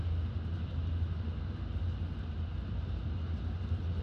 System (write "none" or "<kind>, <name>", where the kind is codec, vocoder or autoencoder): none